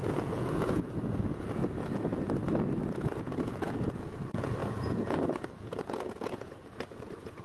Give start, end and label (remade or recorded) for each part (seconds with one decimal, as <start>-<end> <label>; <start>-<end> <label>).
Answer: 0.0-1.6 remade; 1.6-3.2 recorded; 3.2-7.4 remade